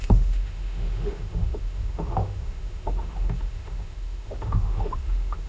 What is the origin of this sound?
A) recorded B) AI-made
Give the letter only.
B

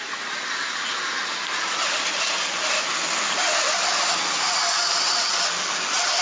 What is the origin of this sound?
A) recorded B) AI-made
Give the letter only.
A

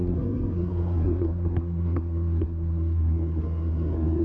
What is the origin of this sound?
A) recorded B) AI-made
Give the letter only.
B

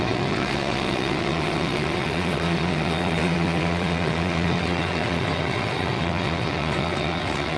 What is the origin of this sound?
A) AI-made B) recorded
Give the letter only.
A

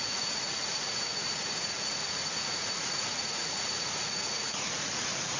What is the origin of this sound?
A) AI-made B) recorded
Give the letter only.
A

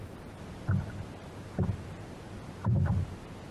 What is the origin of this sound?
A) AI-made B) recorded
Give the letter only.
B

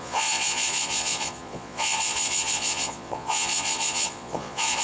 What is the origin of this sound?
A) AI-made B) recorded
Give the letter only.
A